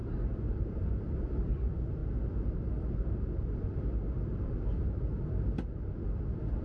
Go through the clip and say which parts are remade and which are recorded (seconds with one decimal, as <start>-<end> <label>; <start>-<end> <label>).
0.0-2.0 remade; 2.0-6.0 recorded; 6.0-6.6 remade